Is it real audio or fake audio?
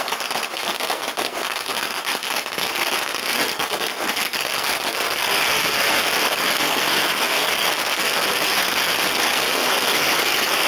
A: fake